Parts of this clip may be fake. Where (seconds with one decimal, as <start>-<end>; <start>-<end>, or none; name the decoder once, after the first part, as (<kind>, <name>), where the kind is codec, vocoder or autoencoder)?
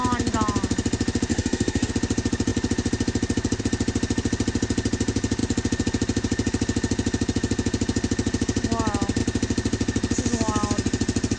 1.3-1.9 (codec, SNAC)